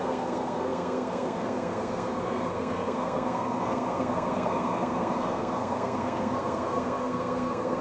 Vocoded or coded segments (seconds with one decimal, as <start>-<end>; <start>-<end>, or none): 0.0-7.8